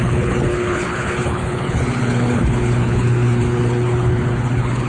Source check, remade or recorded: remade